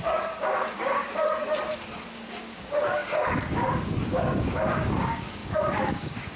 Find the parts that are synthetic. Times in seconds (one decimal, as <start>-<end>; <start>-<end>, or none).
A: 0.0-1.0; 1.9-6.4